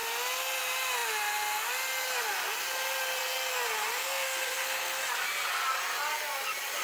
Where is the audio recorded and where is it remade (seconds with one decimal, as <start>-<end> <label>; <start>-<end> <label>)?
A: 0.0-4.0 recorded; 4.0-5.0 remade; 5.0-6.8 recorded